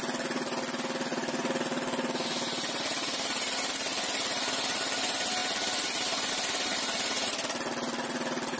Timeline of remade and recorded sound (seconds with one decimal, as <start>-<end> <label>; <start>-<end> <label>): 0.0-8.6 recorded